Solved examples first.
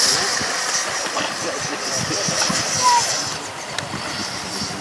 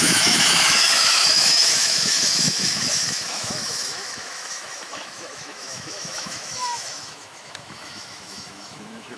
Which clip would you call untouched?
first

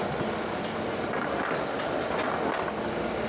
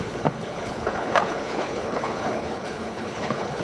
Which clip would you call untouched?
first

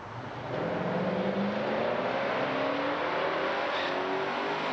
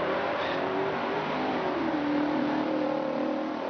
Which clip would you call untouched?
first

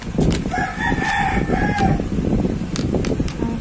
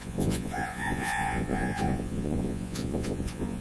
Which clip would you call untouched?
first